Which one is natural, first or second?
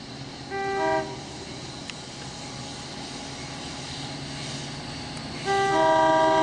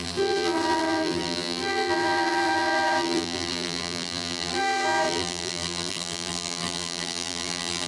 first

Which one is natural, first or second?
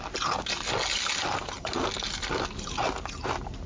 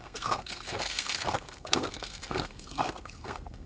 first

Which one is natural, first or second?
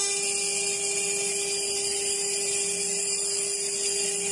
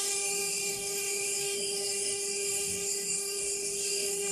first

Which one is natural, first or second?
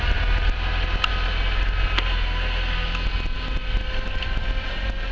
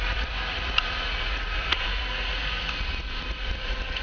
first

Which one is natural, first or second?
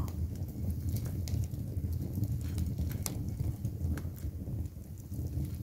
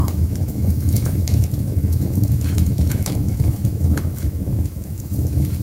first